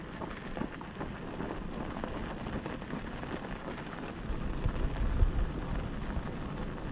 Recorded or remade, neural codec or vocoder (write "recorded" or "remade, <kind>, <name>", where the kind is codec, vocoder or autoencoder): recorded